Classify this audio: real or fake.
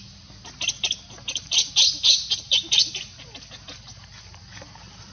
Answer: real